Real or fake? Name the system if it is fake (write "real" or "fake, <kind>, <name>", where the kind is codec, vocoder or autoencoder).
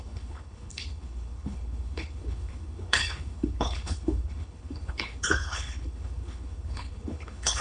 fake, codec, HILCodec